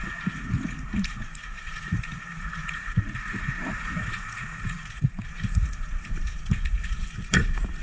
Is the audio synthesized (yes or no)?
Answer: yes